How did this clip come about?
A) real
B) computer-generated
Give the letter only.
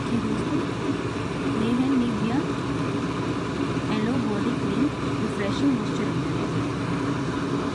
A